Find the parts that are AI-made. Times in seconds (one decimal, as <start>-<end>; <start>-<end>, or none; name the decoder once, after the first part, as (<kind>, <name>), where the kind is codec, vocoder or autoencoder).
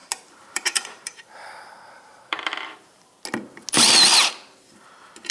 0.0-3.2 (vocoder, BigVGAN v2)